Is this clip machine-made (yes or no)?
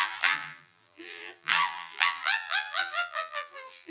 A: yes